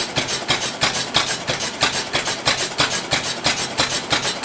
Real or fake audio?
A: real